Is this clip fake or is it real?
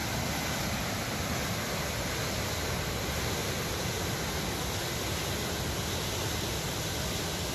real